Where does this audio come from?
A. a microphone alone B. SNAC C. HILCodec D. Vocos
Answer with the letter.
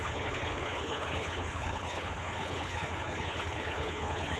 C